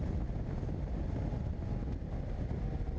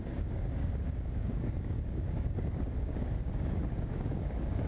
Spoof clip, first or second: second